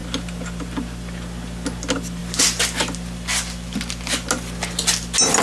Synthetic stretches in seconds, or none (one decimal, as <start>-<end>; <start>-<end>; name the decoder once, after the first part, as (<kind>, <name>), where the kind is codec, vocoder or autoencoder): none